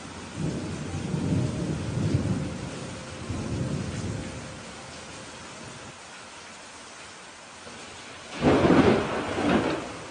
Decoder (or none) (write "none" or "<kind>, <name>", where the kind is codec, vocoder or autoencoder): none